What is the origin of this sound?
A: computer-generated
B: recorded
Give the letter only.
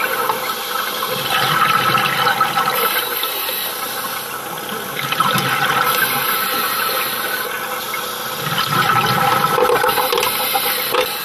B